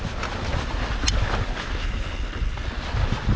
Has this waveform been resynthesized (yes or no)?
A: no